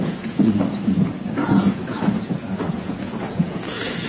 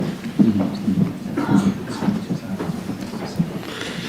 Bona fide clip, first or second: second